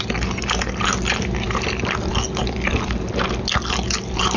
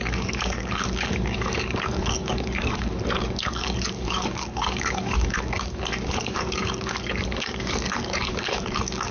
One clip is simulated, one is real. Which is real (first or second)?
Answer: first